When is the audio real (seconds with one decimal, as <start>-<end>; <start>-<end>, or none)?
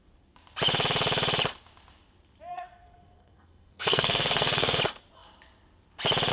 0.0-2.5; 4.8-6.3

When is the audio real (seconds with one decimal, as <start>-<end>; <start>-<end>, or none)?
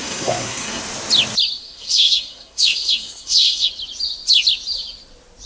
0.8-1.6; 3.7-5.5